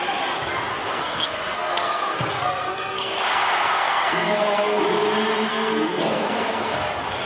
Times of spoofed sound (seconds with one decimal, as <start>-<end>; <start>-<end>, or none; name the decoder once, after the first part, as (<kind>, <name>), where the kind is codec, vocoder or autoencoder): 0.7-4.8 (codec, SNAC); 5.5-6.8